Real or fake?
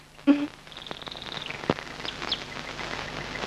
real